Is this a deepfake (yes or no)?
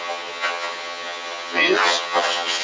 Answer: yes